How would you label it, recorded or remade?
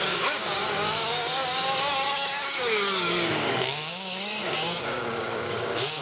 remade